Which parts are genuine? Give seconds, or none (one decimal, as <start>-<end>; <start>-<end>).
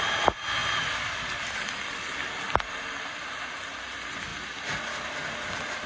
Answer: 0.0-0.6; 3.1-5.9